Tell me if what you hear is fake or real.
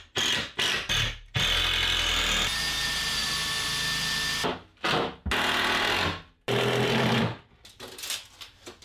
real